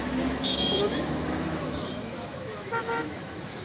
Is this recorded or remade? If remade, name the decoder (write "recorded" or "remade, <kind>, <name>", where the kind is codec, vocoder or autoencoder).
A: remade, autoencoder, DAC-VAE